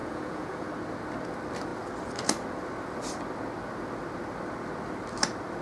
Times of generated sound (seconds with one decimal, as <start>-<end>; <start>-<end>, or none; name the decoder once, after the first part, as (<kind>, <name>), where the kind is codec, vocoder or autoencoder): 0.0-0.7 (vocoder, Vocos)